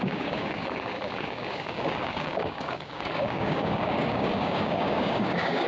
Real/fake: fake